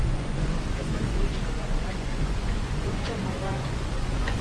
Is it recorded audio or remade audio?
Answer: remade